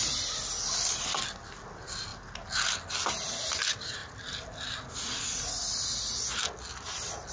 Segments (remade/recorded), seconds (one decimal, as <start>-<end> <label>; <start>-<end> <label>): 0.0-7.3 recorded